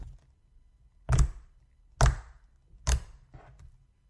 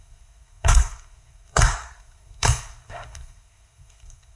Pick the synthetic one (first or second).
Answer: second